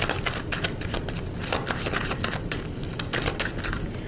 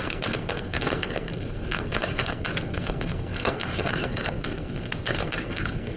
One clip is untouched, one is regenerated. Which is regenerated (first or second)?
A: second